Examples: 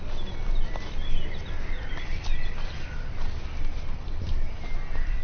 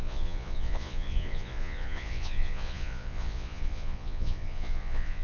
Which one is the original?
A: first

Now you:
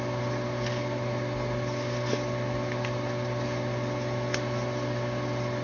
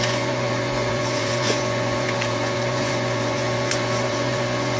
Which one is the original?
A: first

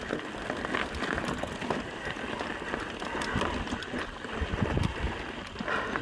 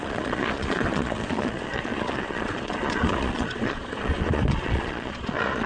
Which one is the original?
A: first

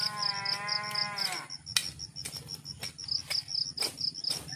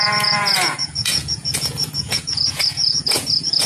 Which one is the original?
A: first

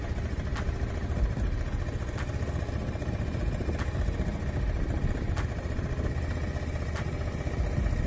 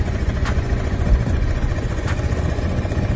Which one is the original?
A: first